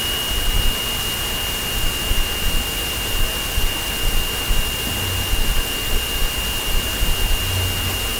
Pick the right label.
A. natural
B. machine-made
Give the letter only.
A